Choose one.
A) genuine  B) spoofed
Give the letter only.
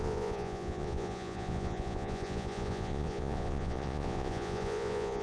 B